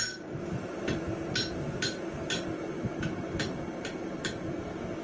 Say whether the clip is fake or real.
real